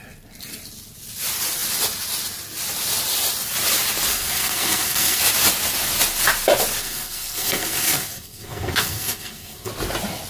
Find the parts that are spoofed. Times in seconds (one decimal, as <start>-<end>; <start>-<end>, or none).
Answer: 4.1-5.2; 6.8-9.7